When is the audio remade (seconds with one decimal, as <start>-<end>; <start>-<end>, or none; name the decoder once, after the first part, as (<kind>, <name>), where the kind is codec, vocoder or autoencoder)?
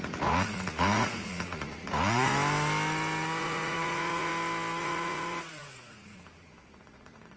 0.0-2.3 (vocoder, Vocos); 3.4-4.3; 4.8-7.4